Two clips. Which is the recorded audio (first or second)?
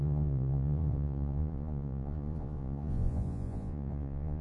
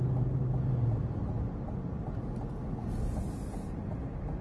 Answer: second